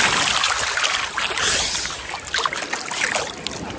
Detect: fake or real real